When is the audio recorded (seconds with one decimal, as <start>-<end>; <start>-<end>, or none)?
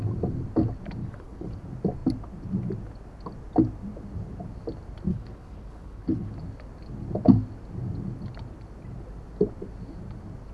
0.0-1.0; 1.6-5.1; 6.3-10.5